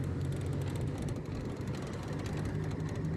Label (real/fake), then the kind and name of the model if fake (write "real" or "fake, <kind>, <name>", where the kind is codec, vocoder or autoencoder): real